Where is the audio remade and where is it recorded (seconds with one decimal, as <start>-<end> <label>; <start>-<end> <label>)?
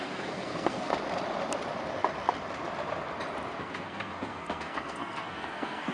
0.0-0.9 remade; 0.9-3.6 recorded; 3.6-5.9 remade